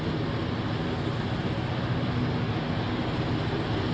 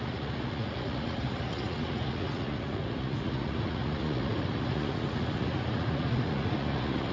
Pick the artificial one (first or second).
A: second